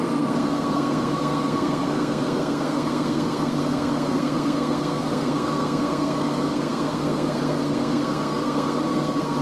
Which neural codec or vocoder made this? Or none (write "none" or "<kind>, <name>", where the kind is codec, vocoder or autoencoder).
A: codec, SNAC